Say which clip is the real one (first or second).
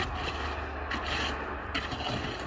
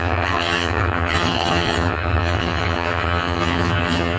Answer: first